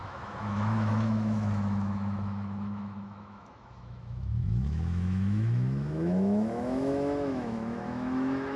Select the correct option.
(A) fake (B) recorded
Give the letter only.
A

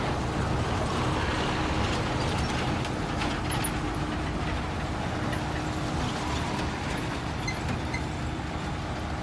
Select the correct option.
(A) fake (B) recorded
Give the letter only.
B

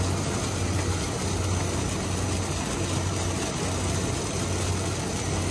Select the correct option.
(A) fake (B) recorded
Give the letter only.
B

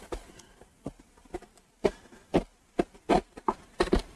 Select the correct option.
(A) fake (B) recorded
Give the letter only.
B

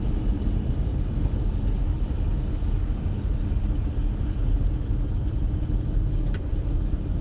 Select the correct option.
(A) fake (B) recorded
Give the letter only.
B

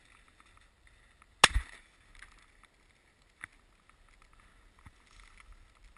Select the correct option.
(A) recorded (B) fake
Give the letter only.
A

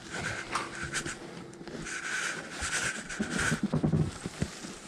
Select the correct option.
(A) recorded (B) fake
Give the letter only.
A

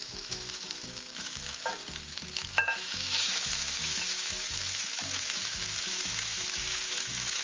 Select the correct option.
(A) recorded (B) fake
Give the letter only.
B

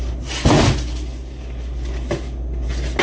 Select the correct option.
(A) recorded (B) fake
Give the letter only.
A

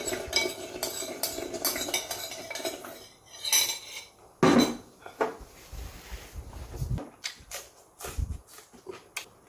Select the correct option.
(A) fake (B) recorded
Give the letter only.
B